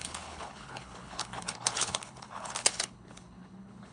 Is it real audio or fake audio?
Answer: fake